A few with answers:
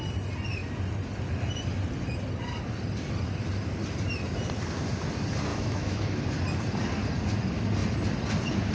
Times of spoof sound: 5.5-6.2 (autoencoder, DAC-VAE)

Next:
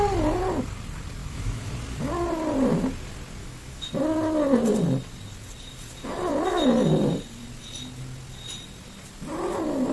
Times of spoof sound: 1.2-1.7 (autoencoder, DAC-VAE); 3.4-3.9

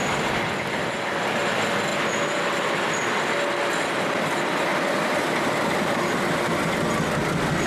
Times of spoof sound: none